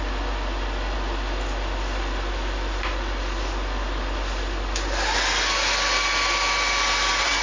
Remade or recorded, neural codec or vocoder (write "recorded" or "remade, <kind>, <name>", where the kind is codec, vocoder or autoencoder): recorded